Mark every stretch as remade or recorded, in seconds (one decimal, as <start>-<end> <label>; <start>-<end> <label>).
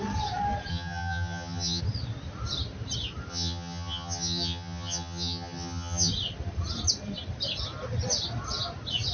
0.0-0.7 recorded; 0.7-1.8 remade; 1.8-3.3 recorded; 3.3-6.1 remade; 6.1-9.1 recorded